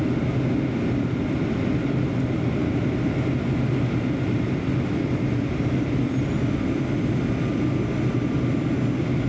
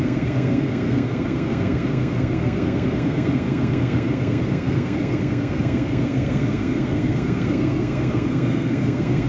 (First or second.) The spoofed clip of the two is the second